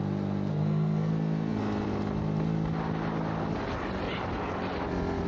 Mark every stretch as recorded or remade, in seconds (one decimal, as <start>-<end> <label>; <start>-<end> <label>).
0.0-0.5 recorded; 0.5-1.1 remade; 1.1-5.3 recorded